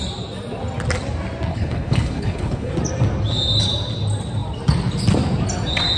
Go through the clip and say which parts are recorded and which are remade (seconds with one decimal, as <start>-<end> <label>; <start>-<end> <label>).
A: 0.0-1.5 recorded; 1.5-2.7 remade; 2.7-6.0 recorded